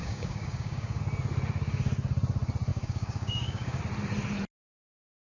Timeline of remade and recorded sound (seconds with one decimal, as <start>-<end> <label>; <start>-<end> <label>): 0.0-1.0 remade; 1.0-2.7 recorded; 2.7-3.8 remade; 3.8-5.3 recorded